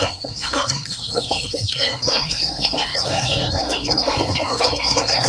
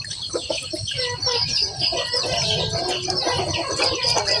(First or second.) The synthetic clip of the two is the first